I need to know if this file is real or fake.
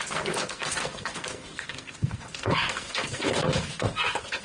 fake